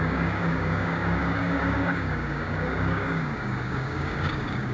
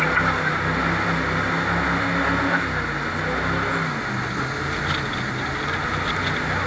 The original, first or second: second